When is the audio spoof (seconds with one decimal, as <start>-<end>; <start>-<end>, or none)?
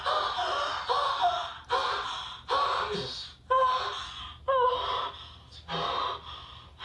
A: none